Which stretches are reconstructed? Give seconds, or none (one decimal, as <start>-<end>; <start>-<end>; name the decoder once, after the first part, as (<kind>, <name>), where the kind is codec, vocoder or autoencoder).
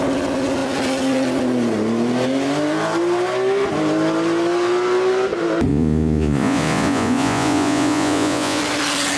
5.7-8.6 (vocoder, Vocos)